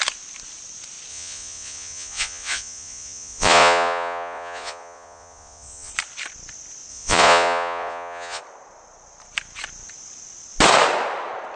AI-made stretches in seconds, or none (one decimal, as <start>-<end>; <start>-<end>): 1.1-5.9; 6.9-8.4